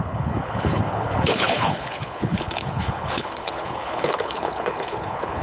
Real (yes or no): no